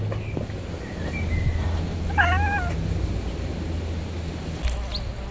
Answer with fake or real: real